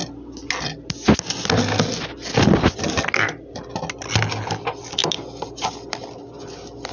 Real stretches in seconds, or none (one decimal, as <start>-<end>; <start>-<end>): 0.0-6.9